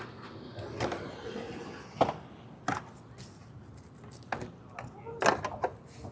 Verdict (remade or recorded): recorded